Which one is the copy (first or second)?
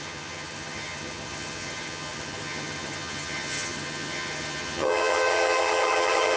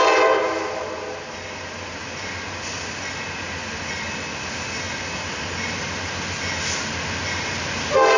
first